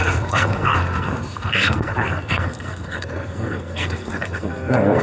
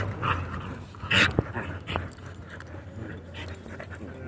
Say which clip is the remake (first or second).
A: first